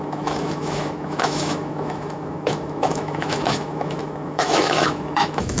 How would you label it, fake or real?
fake